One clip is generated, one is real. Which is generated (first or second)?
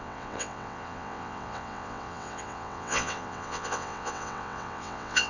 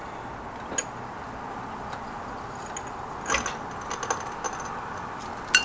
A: first